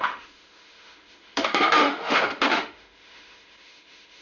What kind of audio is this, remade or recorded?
remade